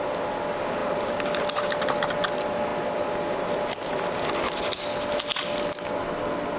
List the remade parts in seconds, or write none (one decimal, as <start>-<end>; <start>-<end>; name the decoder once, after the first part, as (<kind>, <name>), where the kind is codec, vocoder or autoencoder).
none